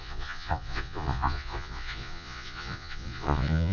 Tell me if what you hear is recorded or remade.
remade